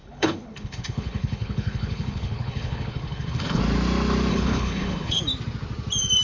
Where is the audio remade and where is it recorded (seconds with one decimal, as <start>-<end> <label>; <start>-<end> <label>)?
0.0-3.6 remade; 3.6-4.3 recorded; 4.3-5.2 remade; 5.2-6.2 recorded